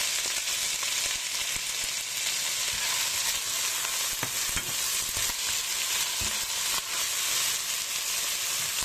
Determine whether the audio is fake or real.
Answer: real